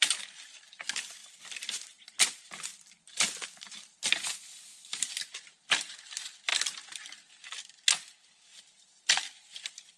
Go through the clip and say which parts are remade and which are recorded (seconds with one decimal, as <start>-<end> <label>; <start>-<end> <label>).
0.0-1.2 recorded; 1.2-1.9 remade; 1.9-10.0 recorded